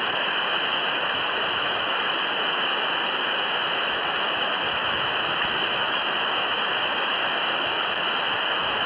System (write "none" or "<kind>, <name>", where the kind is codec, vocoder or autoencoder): autoencoder, DAC-VAE